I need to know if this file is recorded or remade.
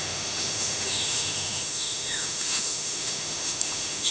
remade